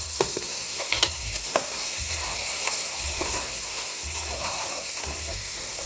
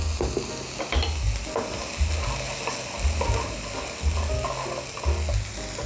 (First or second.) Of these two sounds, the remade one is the first